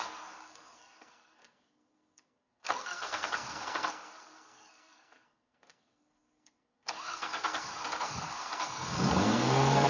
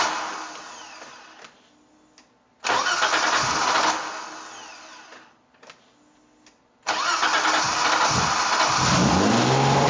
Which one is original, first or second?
second